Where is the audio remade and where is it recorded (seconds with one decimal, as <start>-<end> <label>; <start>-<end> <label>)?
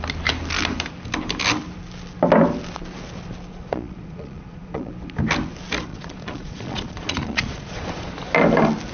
0.0-3.5 recorded; 3.5-4.9 remade; 4.9-5.9 recorded; 5.9-8.1 remade; 8.1-8.9 recorded